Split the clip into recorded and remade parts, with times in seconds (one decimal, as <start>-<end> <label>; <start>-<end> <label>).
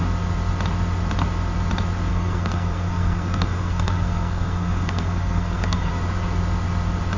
0.0-2.1 recorded; 2.1-5.9 remade; 5.9-7.2 recorded